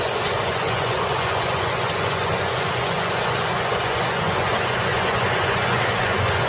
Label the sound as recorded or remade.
remade